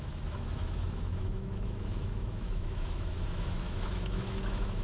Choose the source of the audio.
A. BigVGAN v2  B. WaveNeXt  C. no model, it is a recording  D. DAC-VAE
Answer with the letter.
D